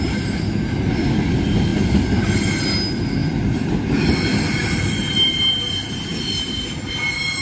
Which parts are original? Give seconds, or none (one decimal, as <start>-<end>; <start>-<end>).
0.0-3.2; 3.7-4.3; 5.3-6.1; 6.9-7.4